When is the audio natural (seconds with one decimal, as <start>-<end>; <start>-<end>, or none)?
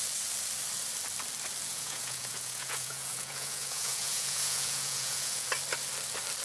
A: 0.0-1.7; 5.5-6.4